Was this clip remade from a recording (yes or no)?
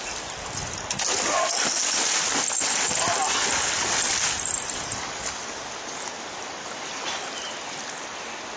no